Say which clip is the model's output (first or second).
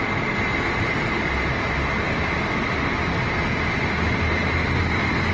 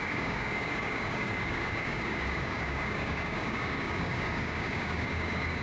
second